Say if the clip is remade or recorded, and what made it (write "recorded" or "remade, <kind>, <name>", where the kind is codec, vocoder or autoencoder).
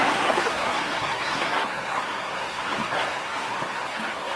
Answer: remade, codec, SNAC